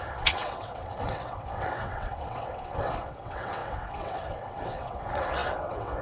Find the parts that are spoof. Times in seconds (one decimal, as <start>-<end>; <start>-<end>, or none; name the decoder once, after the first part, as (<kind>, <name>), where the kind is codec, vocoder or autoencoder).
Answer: 0.0-6.0 (vocoder, WaveNeXt)